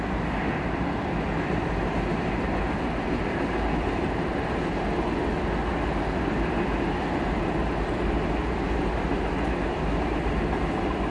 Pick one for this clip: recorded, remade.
recorded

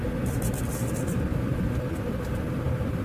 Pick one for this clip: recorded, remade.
recorded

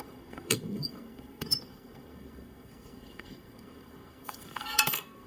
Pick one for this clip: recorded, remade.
remade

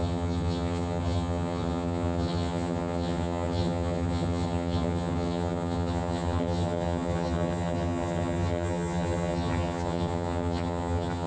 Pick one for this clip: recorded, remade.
remade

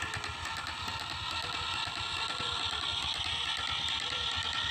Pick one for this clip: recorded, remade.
recorded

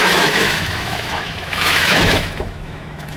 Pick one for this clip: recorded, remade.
remade